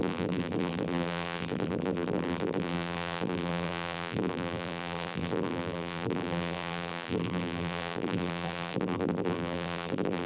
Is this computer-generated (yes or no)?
yes